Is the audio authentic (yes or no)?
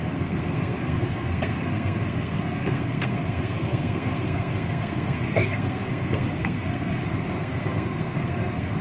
no